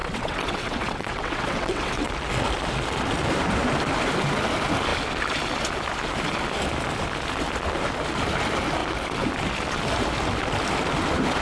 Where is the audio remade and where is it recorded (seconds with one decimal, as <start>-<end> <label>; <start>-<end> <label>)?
0.0-2.1 remade; 2.1-11.4 recorded